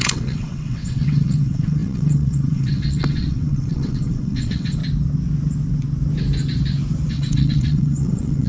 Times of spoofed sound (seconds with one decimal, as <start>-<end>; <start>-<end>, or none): 0.0-4.8; 7.1-8.5